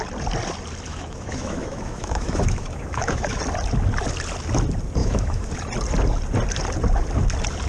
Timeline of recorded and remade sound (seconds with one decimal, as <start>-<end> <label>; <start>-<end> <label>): 0.0-0.9 recorded; 0.9-3.4 remade; 3.4-5.0 recorded; 5.0-5.5 remade; 5.5-7.7 recorded